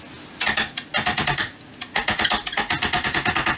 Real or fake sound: real